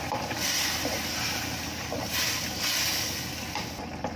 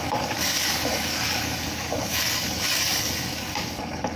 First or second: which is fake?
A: second